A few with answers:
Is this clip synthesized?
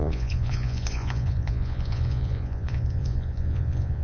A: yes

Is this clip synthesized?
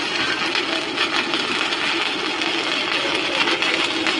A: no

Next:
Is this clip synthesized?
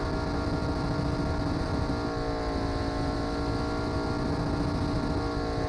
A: no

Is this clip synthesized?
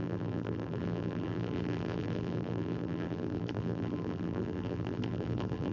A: yes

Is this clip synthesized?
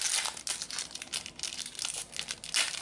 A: no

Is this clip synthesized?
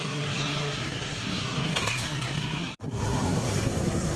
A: yes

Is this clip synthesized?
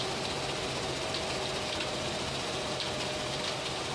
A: no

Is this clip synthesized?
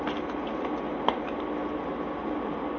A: no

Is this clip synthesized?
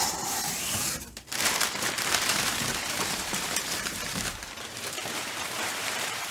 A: yes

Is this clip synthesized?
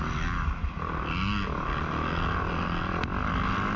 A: no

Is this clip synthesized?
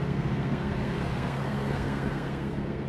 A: yes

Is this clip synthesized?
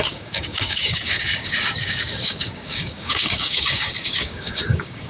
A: yes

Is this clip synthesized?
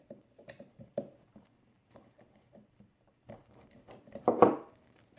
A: yes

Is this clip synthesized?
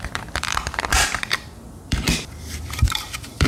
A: yes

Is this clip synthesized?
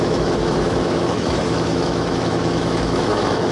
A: yes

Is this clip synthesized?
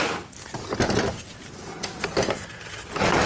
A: no